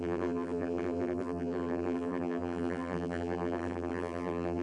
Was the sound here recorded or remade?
remade